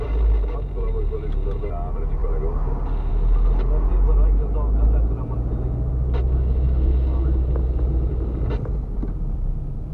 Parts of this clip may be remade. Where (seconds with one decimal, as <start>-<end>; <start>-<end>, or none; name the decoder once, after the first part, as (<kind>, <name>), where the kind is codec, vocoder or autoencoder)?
none